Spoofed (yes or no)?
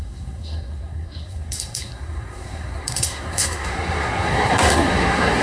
yes